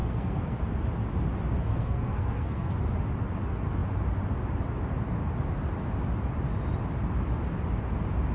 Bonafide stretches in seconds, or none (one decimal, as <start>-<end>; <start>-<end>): 0.6-1.7; 2.8-8.3